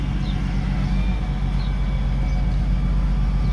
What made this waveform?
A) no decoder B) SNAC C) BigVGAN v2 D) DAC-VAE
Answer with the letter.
A